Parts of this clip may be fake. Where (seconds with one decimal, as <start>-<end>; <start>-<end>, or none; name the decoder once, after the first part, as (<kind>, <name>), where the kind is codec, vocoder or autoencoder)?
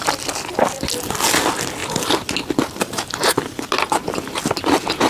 none